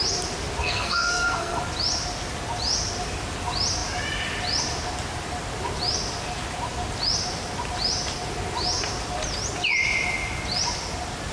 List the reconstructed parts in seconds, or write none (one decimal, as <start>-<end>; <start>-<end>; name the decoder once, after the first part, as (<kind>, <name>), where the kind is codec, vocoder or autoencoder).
0.6-1.6 (codec, SNAC)